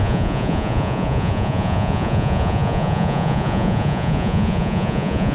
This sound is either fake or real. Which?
fake